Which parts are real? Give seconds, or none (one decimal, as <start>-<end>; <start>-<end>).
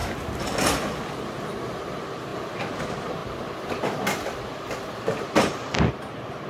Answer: 0.0-6.5